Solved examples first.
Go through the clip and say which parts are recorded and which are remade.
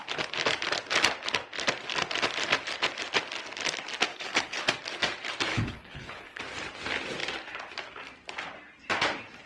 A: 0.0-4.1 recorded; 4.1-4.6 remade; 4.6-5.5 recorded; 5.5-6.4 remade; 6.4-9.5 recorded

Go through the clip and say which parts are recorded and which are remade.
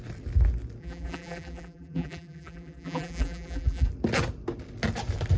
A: 0.0-0.8 recorded; 0.8-3.9 remade; 3.9-5.4 recorded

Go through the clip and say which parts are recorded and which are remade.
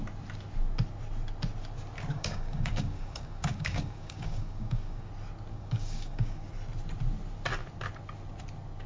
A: 0.0-2.1 recorded; 2.1-5.1 remade; 5.1-5.5 recorded; 5.5-6.5 remade; 6.5-8.9 recorded